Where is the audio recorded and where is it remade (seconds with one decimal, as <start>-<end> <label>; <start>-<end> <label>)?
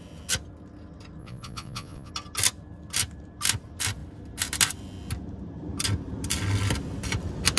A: 0.0-1.2 recorded; 1.2-2.1 remade; 2.1-7.6 recorded